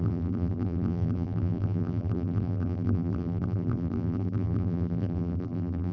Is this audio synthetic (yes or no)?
yes